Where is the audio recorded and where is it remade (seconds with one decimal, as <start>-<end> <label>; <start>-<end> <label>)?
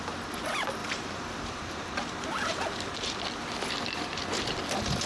0.0-0.8 recorded; 0.8-2.2 remade; 2.2-5.1 recorded